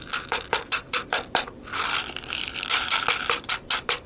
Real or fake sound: fake